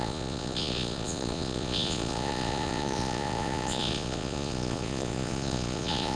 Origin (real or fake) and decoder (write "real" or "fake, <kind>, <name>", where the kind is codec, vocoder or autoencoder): fake, vocoder, Vocos